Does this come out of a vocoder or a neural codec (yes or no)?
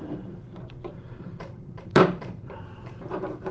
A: yes